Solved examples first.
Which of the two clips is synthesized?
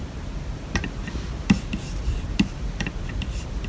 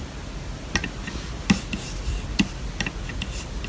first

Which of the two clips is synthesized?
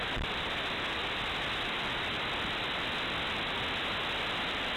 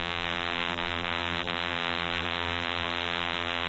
second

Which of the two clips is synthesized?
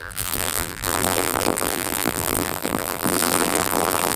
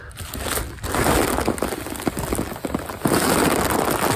first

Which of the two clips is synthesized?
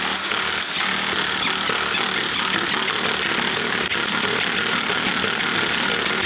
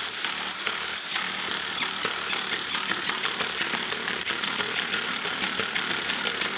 second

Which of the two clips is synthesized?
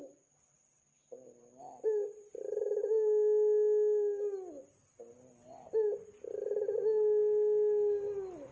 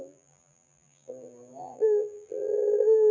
second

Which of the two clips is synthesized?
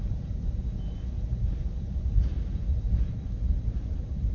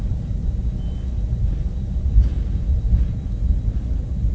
first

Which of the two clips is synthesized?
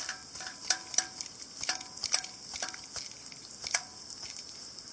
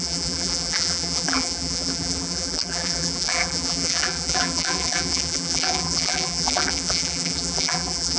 second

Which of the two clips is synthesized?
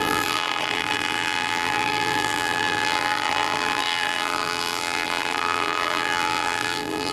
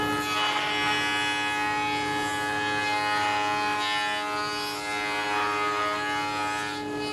first